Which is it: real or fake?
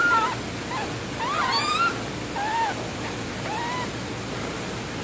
real